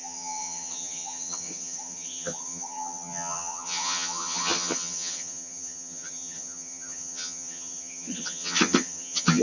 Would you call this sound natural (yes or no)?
no